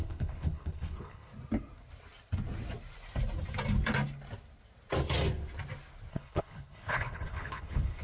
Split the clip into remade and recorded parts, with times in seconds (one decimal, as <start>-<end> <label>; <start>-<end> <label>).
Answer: 0.0-1.3 remade; 1.3-6.1 recorded; 6.1-8.0 remade